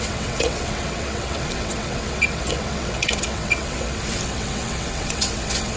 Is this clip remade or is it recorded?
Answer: remade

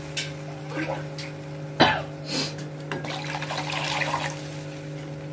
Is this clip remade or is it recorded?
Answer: recorded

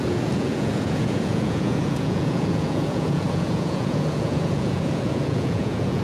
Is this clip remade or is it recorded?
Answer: remade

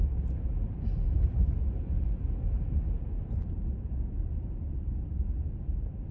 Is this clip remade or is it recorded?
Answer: recorded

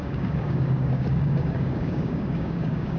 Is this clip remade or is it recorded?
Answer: remade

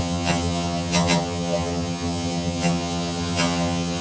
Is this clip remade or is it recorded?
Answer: remade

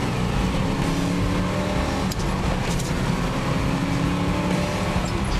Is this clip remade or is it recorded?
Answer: recorded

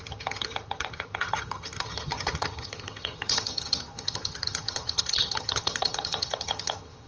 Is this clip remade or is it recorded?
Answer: remade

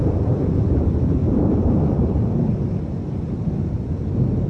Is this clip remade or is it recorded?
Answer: remade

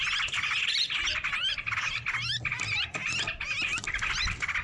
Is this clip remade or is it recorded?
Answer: recorded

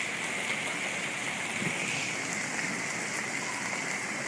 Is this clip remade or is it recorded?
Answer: recorded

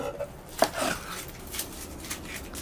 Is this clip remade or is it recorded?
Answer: recorded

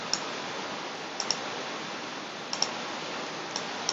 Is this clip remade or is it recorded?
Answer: recorded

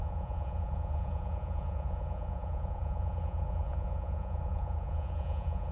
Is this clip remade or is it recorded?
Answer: remade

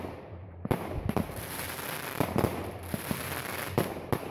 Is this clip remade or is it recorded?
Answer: remade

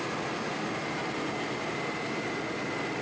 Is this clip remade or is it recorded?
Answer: recorded